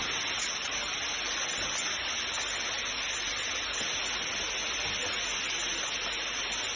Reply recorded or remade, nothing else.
recorded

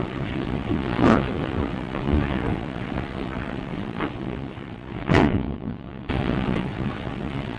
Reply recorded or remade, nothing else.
remade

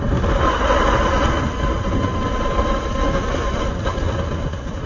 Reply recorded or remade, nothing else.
recorded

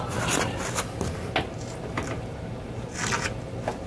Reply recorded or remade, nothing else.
recorded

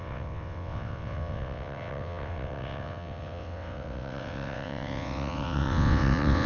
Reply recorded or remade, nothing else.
remade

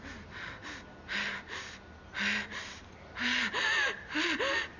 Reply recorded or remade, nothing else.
recorded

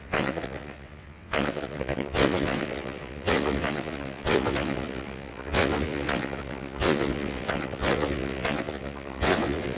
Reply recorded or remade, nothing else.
remade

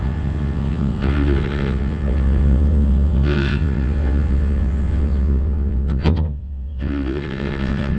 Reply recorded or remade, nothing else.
remade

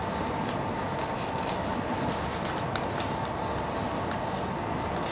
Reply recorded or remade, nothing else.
recorded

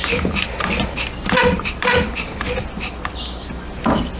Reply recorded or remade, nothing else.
recorded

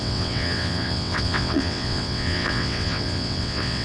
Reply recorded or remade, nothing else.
remade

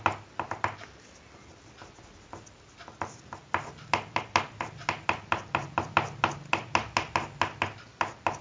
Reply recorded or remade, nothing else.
recorded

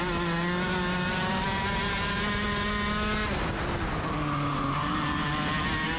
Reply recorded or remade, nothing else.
recorded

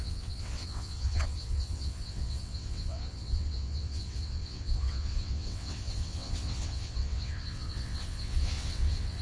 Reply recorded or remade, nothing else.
remade